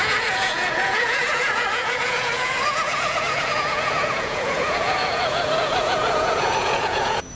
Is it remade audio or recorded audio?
remade